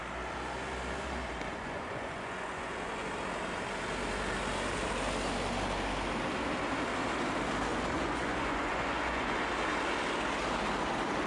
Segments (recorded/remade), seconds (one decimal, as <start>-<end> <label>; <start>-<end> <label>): 0.0-1.5 recorded; 1.5-3.1 remade; 3.1-7.7 recorded; 7.7-9.4 remade; 9.4-11.3 recorded